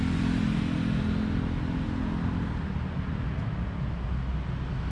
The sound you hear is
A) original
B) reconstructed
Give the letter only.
A